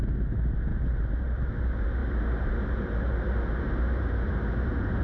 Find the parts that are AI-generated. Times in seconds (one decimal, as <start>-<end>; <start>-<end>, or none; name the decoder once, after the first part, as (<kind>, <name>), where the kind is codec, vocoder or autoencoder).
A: none